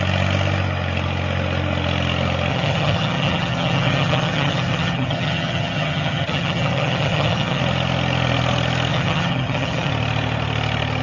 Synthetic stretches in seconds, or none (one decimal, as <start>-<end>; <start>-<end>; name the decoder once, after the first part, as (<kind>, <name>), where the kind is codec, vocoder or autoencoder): 2.5-7.6 (vocoder, HiFi-GAN); 8.9-9.9